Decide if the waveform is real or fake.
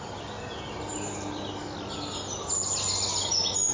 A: real